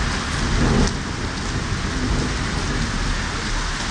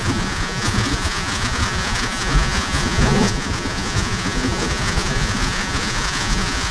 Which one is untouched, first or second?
first